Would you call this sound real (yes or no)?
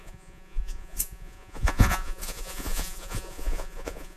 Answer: no